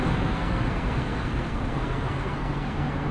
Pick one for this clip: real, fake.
fake